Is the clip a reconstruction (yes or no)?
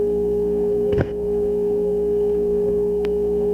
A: yes